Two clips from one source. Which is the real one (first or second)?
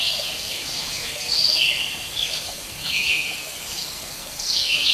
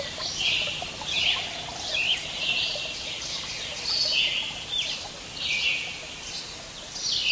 second